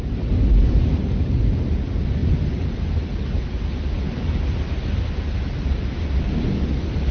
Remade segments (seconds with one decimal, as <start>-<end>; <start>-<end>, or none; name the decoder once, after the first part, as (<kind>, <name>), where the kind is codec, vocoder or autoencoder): none